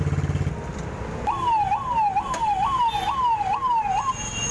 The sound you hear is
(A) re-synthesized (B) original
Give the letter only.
B